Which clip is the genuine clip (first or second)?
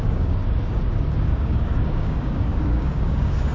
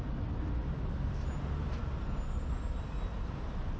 second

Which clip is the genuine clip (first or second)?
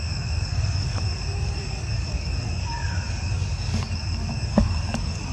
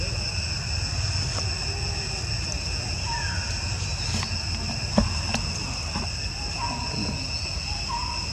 second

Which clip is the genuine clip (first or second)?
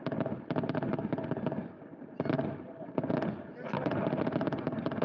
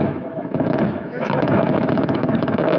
first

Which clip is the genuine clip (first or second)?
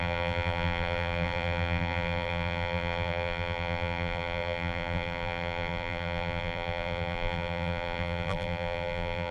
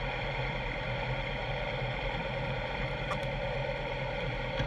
second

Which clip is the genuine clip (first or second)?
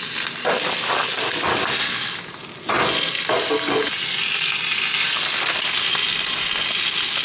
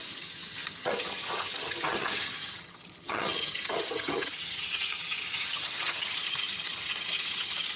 first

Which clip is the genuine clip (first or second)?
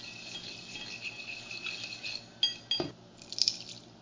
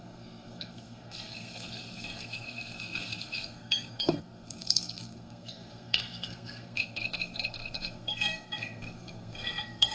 first